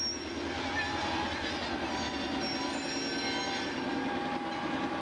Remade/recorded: recorded